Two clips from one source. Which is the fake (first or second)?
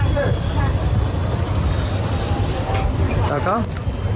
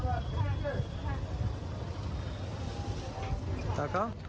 first